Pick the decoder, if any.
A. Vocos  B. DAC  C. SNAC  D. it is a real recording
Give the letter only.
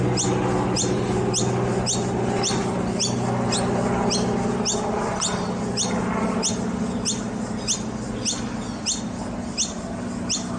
D